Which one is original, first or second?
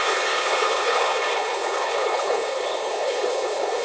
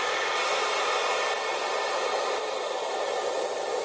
second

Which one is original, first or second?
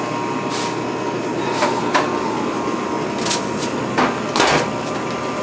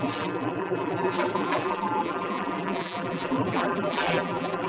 first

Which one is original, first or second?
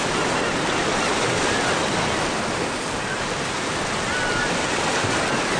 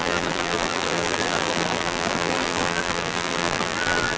first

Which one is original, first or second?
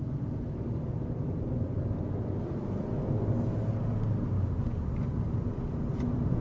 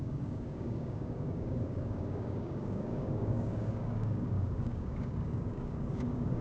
first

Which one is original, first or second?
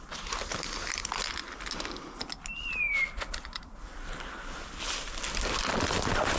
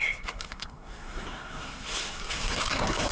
first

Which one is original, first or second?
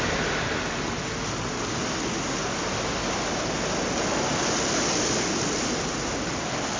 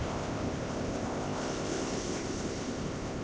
first